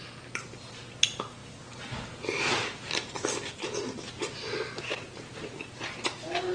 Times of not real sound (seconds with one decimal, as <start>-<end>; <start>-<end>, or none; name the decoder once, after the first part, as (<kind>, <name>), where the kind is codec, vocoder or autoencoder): none